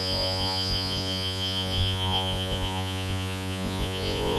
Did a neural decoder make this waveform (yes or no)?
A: yes